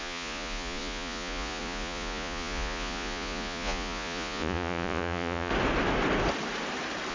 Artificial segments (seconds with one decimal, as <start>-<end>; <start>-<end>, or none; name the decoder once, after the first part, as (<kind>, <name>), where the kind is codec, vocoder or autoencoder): 0.0-5.5 (vocoder, Vocos)